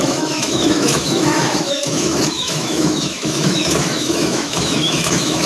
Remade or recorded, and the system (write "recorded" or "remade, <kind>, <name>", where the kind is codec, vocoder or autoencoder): remade, autoencoder, DAC-VAE